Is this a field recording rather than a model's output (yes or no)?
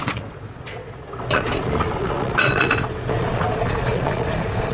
no